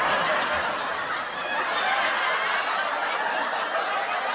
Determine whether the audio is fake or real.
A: real